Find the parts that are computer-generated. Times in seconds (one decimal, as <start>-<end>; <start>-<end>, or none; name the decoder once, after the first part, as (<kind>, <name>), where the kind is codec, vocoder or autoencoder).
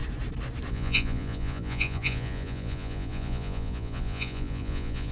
0.7-5.1 (vocoder, Vocos)